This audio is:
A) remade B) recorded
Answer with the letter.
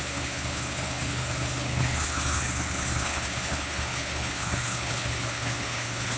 A